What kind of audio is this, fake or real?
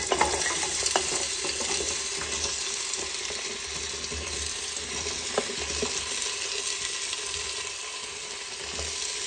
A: real